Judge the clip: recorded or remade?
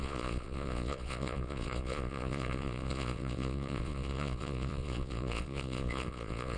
remade